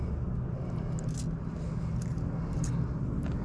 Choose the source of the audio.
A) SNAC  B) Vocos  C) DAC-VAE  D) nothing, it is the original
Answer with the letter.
D